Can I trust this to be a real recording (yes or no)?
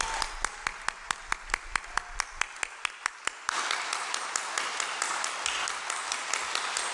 yes